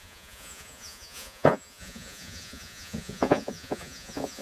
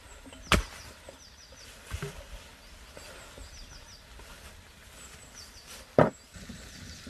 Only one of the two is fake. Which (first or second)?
first